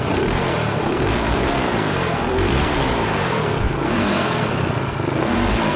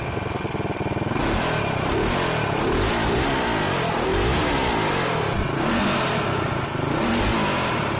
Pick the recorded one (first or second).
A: second